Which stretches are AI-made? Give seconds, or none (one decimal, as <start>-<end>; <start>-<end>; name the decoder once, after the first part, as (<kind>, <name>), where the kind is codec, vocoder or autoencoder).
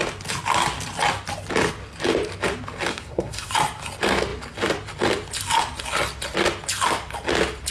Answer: 2.9-3.5 (codec, SNAC)